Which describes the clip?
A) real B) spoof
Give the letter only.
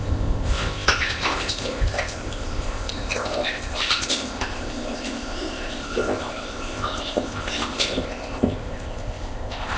B